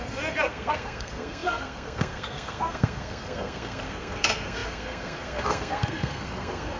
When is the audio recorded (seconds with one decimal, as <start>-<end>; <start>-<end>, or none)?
none